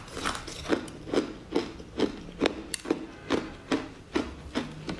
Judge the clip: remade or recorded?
recorded